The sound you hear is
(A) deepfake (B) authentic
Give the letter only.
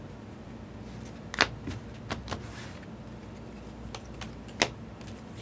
B